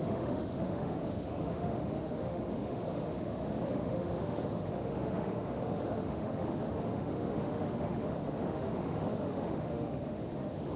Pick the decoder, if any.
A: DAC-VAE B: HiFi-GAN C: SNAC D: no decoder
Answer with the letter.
A